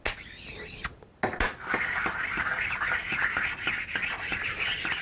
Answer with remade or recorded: recorded